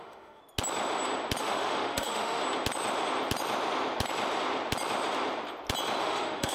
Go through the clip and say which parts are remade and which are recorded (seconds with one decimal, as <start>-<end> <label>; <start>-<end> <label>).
0.0-0.4 remade; 0.4-1.4 recorded; 1.4-2.4 remade; 2.4-6.0 recorded; 6.0-6.5 remade